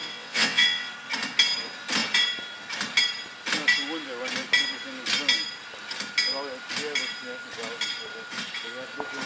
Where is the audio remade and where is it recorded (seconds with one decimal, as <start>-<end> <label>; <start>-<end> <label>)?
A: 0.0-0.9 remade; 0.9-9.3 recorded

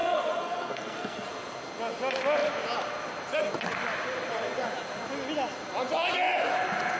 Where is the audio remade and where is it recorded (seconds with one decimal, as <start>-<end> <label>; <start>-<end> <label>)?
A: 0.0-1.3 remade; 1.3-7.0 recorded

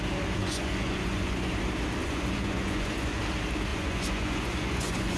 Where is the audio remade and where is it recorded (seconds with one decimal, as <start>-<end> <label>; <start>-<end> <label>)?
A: 0.0-0.4 recorded; 0.4-1.5 remade; 1.5-2.0 recorded; 2.0-3.2 remade; 3.2-3.7 recorded; 3.7-5.2 remade

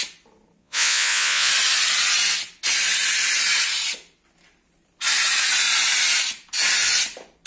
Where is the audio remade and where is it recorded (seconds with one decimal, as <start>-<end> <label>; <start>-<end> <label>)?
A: 0.0-0.6 recorded; 0.6-1.5 remade; 1.5-7.5 recorded